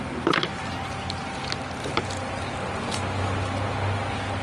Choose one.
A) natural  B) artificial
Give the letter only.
A